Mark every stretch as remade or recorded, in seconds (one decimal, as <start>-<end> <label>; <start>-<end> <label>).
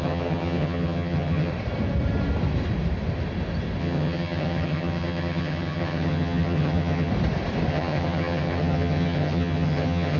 0.0-1.5 remade; 1.5-3.8 recorded; 3.8-7.1 remade; 7.1-7.7 recorded; 7.7-10.2 remade